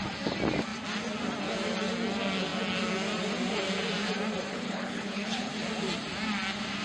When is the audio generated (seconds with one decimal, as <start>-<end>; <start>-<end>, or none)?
4.5-5.5